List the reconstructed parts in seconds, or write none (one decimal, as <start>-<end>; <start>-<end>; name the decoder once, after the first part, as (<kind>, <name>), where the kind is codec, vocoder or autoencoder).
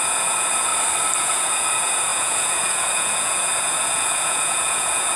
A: 0.0-0.7 (vocoder, Vocos); 1.2-5.2